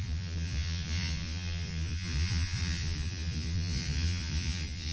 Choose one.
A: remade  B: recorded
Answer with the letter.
A